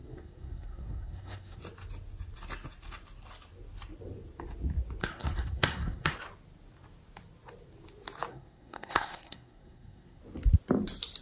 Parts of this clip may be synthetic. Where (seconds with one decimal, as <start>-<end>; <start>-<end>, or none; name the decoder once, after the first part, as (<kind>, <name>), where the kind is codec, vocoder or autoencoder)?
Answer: 0.0-1.6 (codec, SNAC); 5.0-6.1; 8.3-10.2